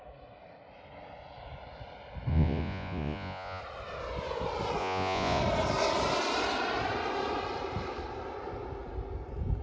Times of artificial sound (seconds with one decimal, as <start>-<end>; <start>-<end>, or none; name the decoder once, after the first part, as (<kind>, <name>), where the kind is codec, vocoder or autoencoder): 2.3-3.6 (vocoder, Vocos); 4.8-5.4